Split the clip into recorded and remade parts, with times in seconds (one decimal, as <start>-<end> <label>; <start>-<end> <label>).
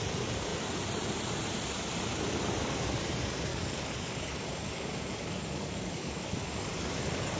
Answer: 0.0-3.5 recorded; 3.5-7.4 remade